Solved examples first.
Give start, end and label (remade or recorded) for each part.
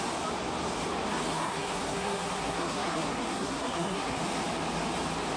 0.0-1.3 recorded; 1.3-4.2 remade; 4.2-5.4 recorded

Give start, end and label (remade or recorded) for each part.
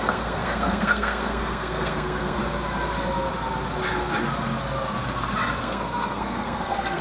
0.0-2.4 remade; 2.4-5.6 recorded; 5.6-7.0 remade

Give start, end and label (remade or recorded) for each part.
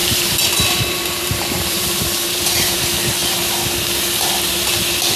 0.0-2.8 remade; 2.8-5.2 recorded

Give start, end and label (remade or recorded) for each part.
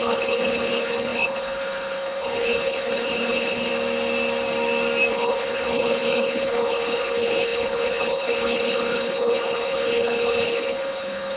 0.0-3.7 remade; 3.7-5.1 recorded; 5.1-11.4 remade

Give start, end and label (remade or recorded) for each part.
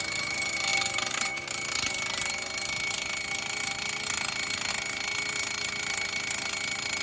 0.0-7.0 recorded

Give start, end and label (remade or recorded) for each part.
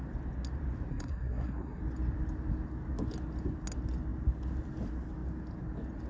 0.0-0.9 recorded; 0.9-1.8 remade; 1.8-6.1 recorded